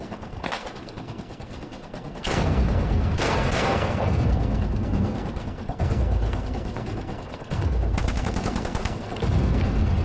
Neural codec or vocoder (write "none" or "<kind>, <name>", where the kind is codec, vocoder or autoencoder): codec, SNAC